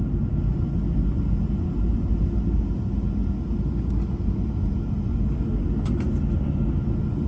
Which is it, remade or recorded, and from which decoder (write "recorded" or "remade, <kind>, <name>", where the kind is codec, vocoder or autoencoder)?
recorded